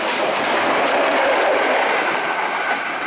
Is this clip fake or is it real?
fake